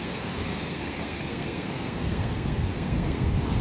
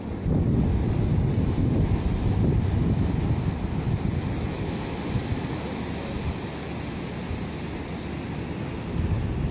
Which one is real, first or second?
second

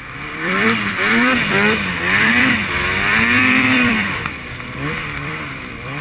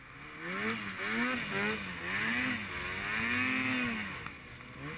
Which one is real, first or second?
second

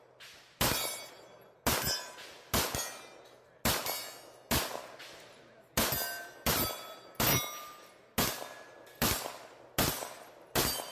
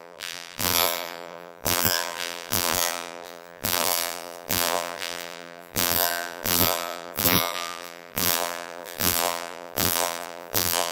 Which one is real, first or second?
first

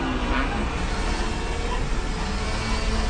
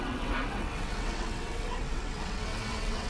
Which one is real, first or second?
first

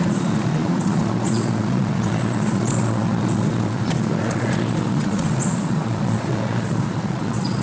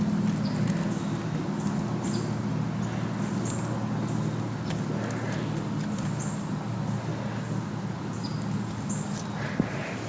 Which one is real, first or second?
second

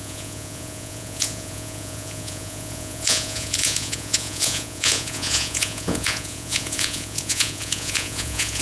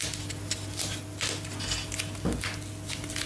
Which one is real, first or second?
second